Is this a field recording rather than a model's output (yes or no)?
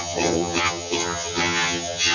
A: no